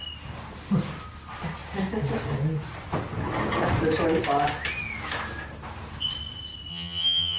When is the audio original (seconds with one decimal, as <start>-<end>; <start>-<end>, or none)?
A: 0.0-6.7